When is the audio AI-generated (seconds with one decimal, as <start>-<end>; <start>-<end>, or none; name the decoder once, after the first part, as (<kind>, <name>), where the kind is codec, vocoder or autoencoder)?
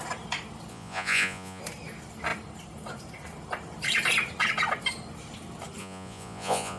0.7-1.6 (vocoder, Vocos); 5.8-6.8